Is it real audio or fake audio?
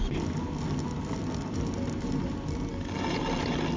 real